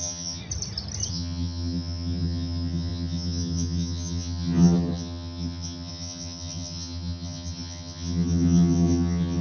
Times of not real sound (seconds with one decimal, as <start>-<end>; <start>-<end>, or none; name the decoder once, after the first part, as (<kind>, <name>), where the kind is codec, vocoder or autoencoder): 0.0-0.4 (vocoder, HiFi-GAN); 1.1-9.4